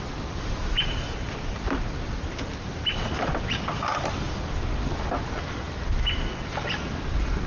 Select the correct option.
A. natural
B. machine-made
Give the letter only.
A